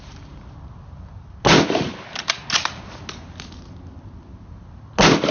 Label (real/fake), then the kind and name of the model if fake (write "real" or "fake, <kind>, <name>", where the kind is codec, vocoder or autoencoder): real